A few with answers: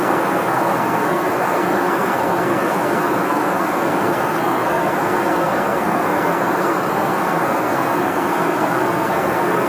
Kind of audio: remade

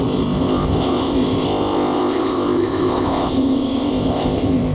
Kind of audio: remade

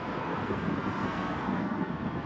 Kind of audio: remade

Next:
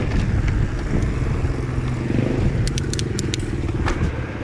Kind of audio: recorded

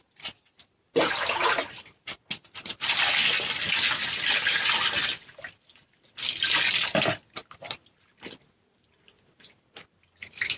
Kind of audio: recorded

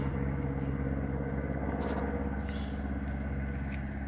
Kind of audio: recorded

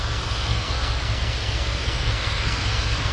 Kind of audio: remade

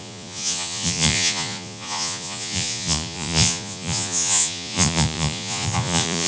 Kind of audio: remade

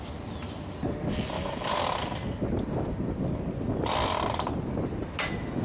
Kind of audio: recorded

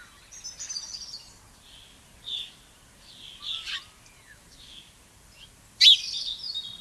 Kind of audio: recorded